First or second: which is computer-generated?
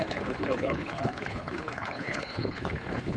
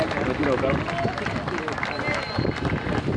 first